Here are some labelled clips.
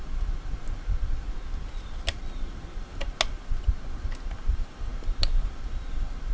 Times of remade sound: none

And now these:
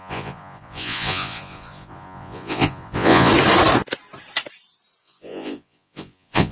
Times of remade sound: 0.0-3.3 (vocoder, Vocos); 5.0-6.5

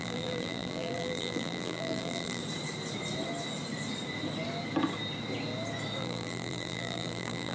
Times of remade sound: 0.0-2.4 (vocoder, BigVGAN v2); 6.0-7.5